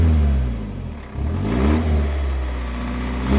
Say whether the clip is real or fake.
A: real